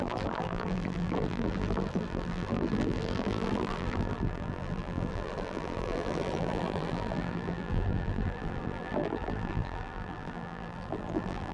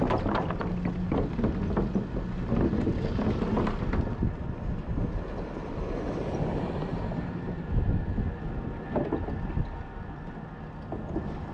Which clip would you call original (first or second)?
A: second